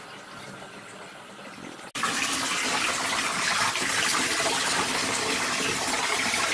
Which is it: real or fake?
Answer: real